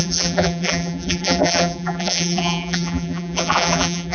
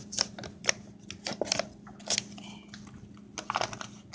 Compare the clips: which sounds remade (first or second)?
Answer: first